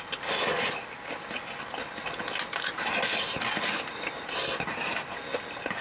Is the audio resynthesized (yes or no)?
no